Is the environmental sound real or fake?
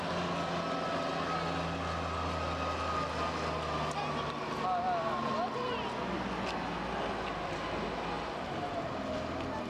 real